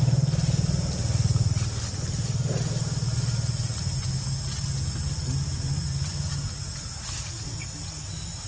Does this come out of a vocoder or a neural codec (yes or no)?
no